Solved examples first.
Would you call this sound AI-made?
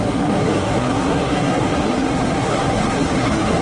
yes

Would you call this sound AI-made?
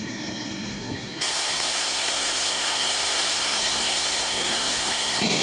yes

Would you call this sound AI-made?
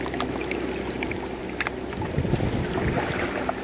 no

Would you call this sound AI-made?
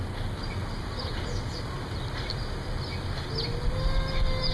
no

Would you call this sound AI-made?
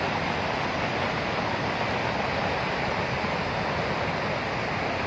no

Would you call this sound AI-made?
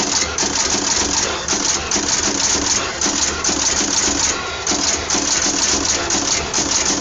no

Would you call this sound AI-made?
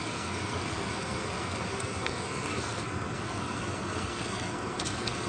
yes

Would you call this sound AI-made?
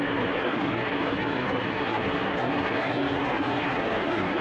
yes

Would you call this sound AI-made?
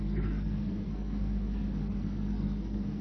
yes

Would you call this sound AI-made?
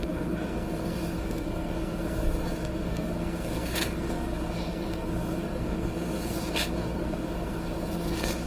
yes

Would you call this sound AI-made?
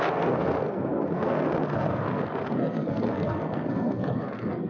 yes